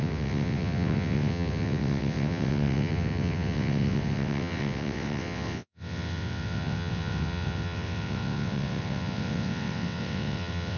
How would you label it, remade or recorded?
remade